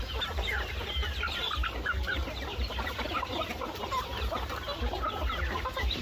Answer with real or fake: real